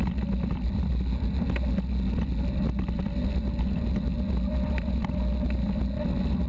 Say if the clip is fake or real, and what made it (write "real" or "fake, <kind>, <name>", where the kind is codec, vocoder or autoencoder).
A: real